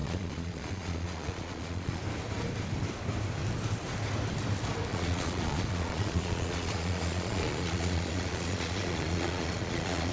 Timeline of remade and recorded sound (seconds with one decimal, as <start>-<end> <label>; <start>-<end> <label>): 0.0-2.0 remade; 2.0-4.9 recorded; 4.9-10.1 remade